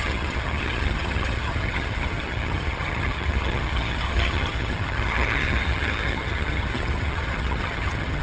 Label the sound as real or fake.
fake